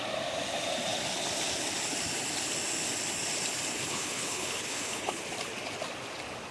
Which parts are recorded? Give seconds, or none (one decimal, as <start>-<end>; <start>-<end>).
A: 0.0-3.8; 5.2-6.5